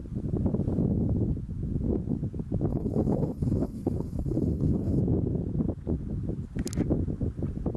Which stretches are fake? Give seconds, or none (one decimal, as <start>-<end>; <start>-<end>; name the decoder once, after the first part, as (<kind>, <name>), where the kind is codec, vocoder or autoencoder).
2.7-5.0 (codec, HILCodec)